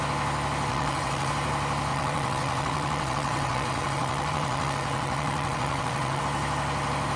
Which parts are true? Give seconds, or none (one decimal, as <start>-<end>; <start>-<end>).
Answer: 0.0-0.7; 1.3-1.9; 6.2-7.2